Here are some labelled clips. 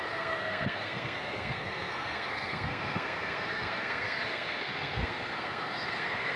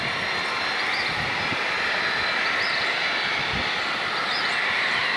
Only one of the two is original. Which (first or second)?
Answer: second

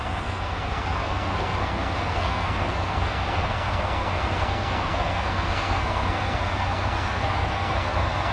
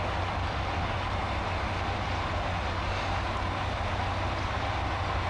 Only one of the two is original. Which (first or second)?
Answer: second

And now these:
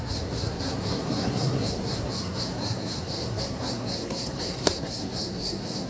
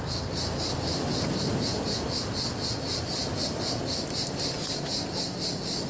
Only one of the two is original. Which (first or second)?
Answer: second